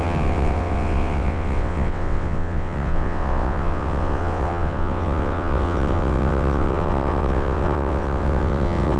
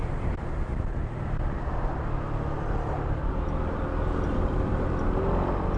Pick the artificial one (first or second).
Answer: first